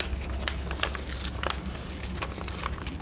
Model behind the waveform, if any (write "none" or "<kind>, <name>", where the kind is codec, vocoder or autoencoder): none